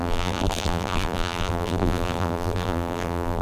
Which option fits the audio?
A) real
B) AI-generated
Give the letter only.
B